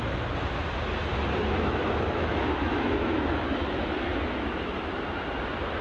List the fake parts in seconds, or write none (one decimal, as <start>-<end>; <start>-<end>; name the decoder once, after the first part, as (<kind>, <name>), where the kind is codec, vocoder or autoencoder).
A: 1.4-4.9 (autoencoder, DAC-VAE)